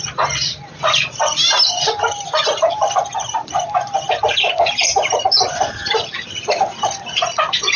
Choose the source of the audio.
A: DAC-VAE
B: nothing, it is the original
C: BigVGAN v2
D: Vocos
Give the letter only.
C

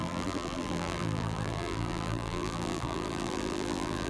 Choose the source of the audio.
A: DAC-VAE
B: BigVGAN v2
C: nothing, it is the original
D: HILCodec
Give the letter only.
B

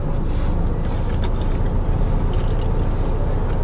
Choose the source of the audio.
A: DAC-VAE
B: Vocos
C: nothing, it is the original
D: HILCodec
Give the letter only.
C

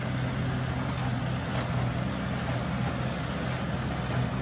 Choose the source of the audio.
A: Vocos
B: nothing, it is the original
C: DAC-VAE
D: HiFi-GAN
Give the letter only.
B